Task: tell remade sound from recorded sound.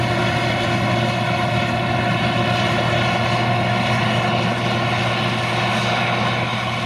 recorded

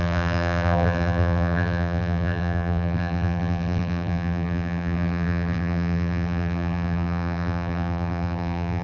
remade